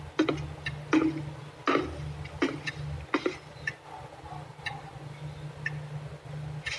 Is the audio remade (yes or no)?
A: no